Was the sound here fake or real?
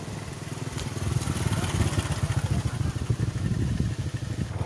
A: real